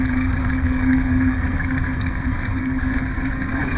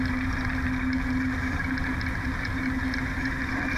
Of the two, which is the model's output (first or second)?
first